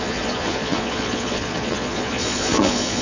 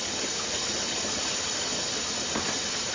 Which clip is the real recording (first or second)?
second